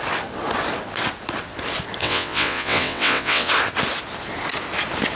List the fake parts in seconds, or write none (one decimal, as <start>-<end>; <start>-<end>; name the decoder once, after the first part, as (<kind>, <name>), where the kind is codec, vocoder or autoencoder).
2.0-3.5 (vocoder, WaveNeXt)